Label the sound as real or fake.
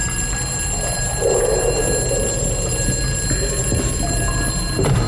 real